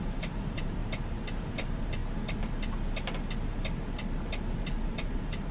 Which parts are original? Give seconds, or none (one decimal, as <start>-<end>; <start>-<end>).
0.8-1.4; 2.0-4.9